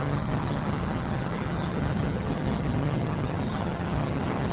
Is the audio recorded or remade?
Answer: remade